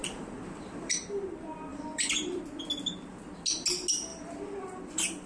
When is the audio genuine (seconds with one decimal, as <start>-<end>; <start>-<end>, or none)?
0.9-1.7; 2.4-4.1